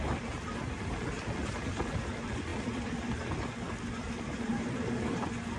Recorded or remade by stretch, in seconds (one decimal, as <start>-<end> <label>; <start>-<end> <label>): 0.0-5.6 recorded